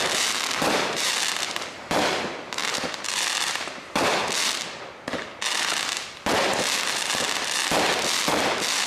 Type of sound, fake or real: real